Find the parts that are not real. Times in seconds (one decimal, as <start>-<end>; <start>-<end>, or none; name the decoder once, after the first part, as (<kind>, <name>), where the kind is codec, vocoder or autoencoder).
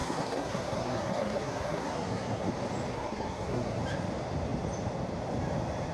0.0-2.5 (codec, SNAC); 2.9-3.8